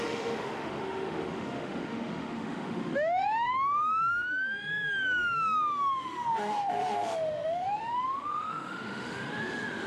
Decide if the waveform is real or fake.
fake